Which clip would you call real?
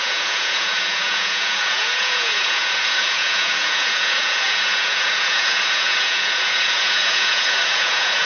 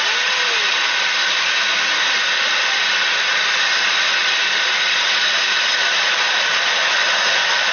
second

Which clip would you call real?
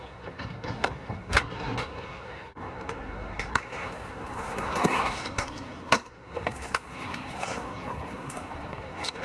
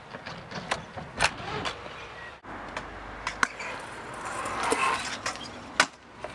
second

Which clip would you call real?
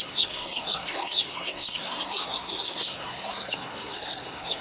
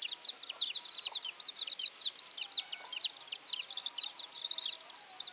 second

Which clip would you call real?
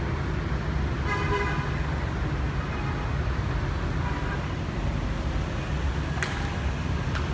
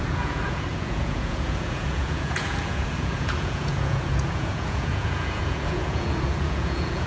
first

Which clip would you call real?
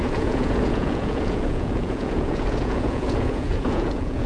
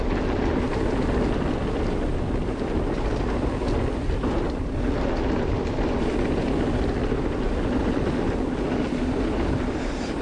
second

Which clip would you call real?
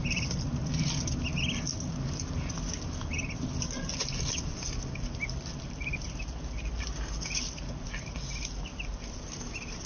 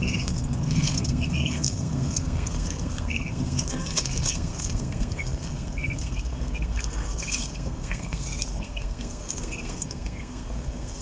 first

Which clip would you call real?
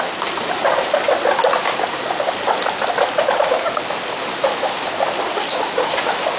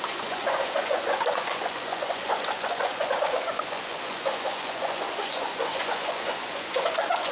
first